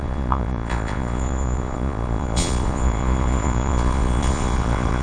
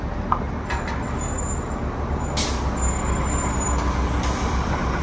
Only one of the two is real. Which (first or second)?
second